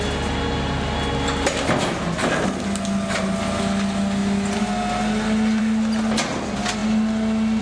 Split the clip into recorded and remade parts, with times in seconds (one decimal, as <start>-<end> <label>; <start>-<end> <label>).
0.0-7.6 recorded